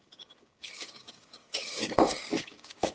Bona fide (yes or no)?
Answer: no